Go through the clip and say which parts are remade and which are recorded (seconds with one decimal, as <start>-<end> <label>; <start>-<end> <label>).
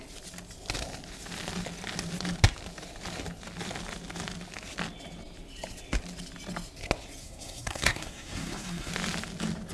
0.0-7.2 recorded; 7.2-8.9 remade; 8.9-9.7 recorded